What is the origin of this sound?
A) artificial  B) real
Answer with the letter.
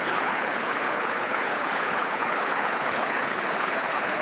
A